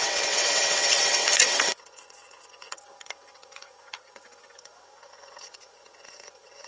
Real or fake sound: fake